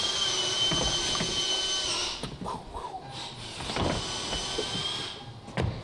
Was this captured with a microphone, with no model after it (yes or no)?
yes